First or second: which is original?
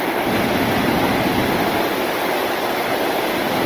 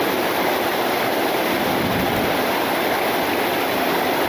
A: first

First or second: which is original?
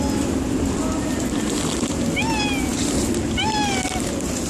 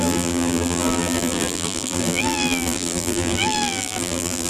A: first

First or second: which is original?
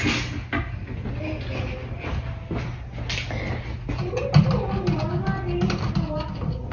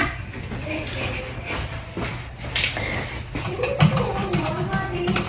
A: first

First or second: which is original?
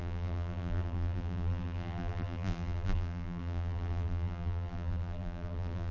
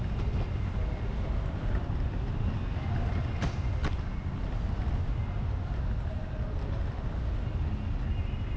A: second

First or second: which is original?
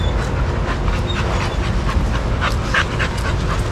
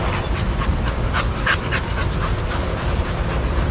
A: first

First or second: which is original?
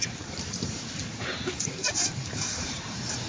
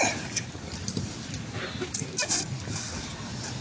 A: second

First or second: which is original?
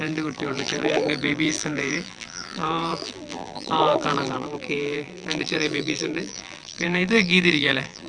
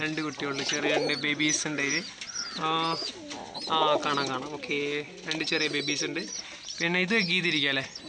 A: second